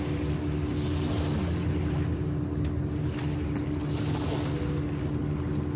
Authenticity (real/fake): real